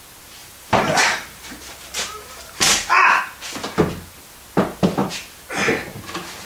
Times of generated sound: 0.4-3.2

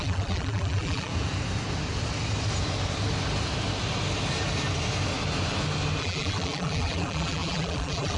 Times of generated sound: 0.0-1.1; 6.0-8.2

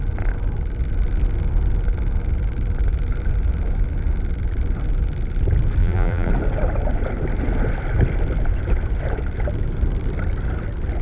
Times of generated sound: 5.8-6.3